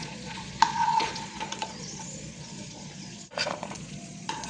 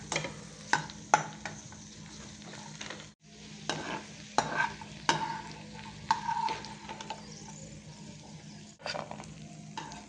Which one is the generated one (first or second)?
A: first